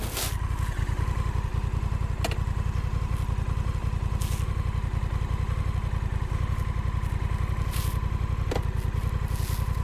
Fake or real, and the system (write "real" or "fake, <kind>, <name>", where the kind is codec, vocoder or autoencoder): real